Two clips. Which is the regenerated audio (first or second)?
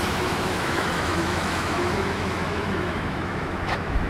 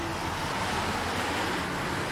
first